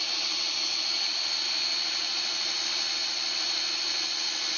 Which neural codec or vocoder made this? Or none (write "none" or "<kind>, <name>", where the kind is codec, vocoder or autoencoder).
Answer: none